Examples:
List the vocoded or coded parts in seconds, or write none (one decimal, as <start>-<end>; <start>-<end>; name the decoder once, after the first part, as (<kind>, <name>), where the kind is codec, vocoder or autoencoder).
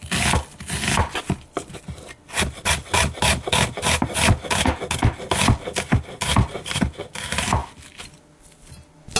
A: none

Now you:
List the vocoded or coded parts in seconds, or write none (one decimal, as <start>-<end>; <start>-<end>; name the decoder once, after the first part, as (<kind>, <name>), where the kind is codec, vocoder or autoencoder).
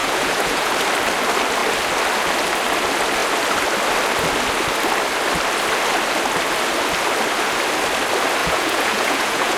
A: 0.0-0.7 (vocoder, Vocos); 8.4-9.6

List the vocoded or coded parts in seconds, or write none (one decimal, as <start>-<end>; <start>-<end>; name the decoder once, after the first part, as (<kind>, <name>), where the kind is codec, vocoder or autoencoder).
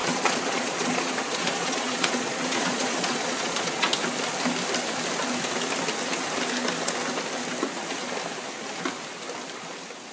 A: 0.0-3.9 (vocoder, Vocos)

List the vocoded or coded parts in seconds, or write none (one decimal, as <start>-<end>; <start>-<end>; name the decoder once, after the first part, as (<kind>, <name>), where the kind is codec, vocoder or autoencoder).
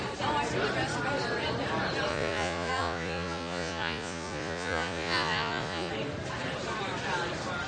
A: 2.1-5.9 (vocoder, Vocos)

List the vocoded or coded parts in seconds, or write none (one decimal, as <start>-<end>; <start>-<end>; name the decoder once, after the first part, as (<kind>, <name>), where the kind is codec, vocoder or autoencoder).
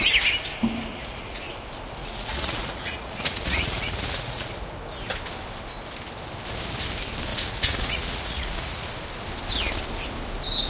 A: 0.9-1.4 (vocoder, Vocos); 2.0-4.5; 7.3-8.8